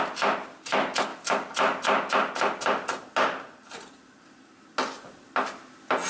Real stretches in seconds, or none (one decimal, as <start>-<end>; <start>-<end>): 0.0-6.1